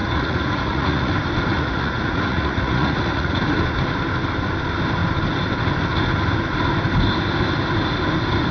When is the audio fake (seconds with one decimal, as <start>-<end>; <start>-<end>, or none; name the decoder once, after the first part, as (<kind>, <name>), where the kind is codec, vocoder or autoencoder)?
0.0-1.1 (vocoder, Vocos); 1.5-3.4